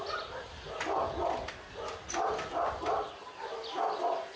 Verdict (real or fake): real